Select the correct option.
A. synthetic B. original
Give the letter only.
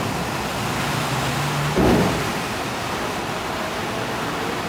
B